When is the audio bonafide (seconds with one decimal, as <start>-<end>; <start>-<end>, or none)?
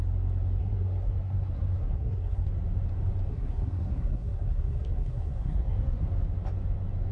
0.0-0.6; 2.5-3.3; 6.0-7.1